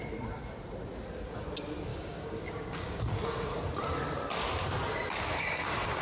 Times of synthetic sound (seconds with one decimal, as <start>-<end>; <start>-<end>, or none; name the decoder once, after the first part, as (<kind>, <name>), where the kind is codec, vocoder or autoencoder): 1.9-3.0 (codec, DAC)